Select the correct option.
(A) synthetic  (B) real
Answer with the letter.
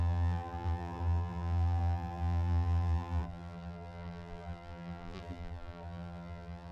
A